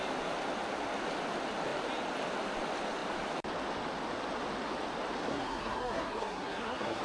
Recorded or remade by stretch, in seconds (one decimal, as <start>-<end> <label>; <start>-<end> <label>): 0.0-5.3 recorded; 5.3-7.0 remade